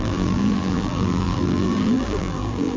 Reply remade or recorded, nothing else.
remade